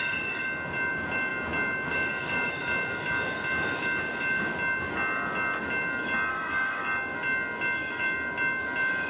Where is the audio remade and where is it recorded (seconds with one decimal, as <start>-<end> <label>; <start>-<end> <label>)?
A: 0.0-6.3 recorded; 6.3-6.8 remade; 6.8-9.1 recorded